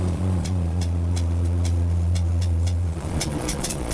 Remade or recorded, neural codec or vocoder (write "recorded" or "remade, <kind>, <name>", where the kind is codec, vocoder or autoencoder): remade, vocoder, Vocos